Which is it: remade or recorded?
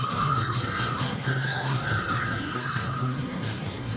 remade